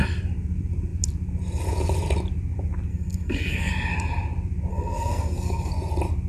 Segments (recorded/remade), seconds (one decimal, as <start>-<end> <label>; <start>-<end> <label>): 0.0-2.9 recorded; 2.9-3.7 remade; 3.7-4.7 recorded; 4.7-5.7 remade; 5.7-6.3 recorded